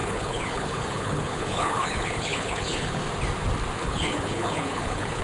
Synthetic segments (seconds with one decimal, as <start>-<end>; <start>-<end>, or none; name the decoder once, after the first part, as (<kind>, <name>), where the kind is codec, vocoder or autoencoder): 0.0-3.0 (codec, HILCodec); 3.8-5.2